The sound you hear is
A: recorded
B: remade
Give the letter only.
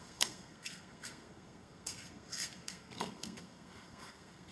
B